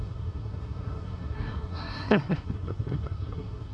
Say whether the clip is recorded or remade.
remade